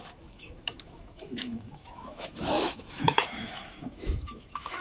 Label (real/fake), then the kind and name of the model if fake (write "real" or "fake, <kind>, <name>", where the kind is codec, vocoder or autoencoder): fake, autoencoder, DAC-VAE